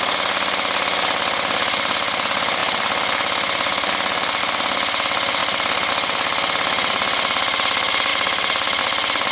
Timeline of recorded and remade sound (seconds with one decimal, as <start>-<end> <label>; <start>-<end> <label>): 0.0-9.3 recorded